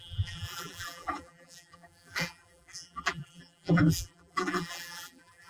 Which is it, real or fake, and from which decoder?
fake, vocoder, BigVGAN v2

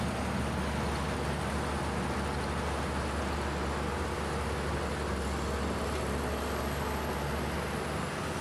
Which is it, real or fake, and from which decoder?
real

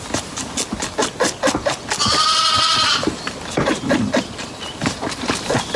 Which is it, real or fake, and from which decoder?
real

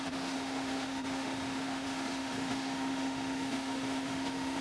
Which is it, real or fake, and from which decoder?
fake, autoencoder, DAC-VAE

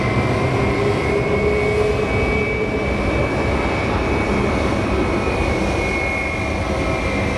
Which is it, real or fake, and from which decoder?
real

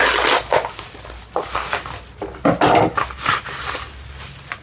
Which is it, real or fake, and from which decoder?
real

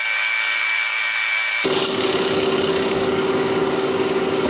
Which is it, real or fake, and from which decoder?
fake, codec, DAC